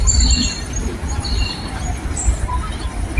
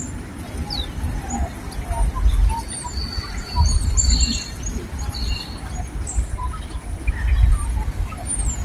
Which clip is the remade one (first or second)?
first